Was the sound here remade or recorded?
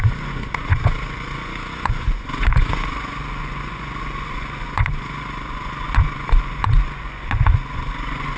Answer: remade